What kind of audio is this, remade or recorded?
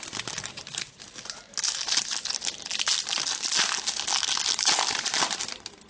recorded